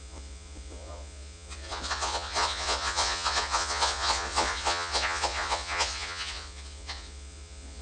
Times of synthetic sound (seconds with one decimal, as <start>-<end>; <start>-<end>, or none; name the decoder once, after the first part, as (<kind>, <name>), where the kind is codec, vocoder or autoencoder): 0.0-7.8 (vocoder, Vocos)